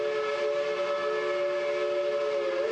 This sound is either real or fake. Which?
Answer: real